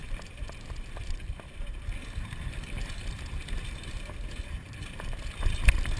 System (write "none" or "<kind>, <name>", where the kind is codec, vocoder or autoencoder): none